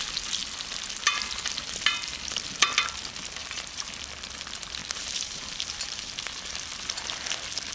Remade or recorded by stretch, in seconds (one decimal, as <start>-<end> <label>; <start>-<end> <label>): 0.0-3.4 recorded; 3.4-3.9 remade; 3.9-4.8 recorded; 4.8-6.1 remade; 6.1-7.7 recorded